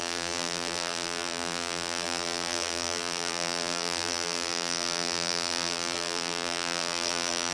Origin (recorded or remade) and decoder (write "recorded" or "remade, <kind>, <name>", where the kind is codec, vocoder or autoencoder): remade, vocoder, BigVGAN v2